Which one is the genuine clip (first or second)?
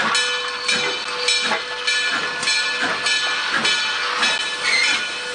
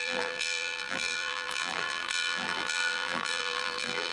first